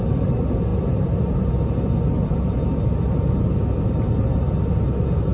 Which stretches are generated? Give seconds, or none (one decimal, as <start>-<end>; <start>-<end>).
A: none

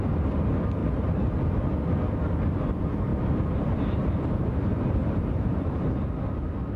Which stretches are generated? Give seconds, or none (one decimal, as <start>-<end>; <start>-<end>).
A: 0.8-1.8; 3.1-5.9

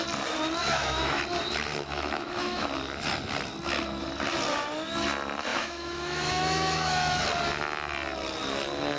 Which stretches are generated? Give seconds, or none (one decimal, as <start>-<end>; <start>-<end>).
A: 0.6-1.2; 1.7-2.7; 5.5-7.2

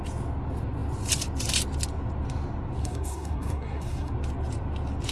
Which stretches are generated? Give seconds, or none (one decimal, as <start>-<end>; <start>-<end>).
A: 2.8-4.1